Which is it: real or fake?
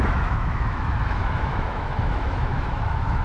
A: fake